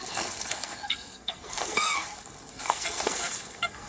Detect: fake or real fake